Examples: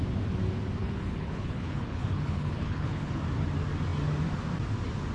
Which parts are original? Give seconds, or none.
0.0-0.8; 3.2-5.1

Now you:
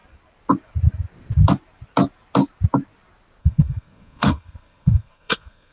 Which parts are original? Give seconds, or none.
0.0-3.4

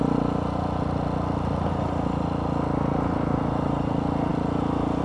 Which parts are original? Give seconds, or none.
0.0-5.0